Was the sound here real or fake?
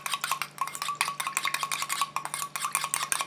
real